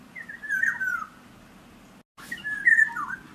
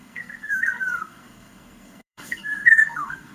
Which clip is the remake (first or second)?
second